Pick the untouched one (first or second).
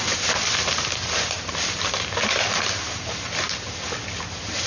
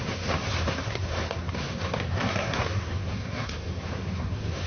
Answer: first